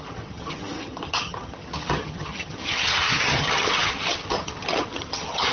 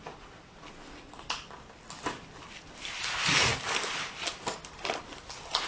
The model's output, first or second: first